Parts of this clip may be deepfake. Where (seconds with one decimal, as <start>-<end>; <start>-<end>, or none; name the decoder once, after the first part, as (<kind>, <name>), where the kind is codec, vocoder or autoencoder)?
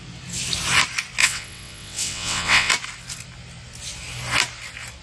1.2-2.7 (vocoder, WaveNeXt)